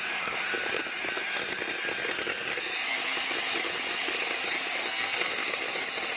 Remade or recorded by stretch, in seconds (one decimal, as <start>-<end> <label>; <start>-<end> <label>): 0.0-4.8 recorded; 4.8-5.3 remade; 5.3-6.2 recorded